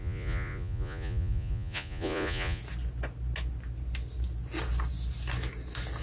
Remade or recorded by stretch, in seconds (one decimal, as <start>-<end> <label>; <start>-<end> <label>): 0.0-2.6 remade; 2.6-6.0 recorded